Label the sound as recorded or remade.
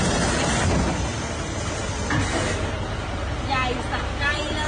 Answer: recorded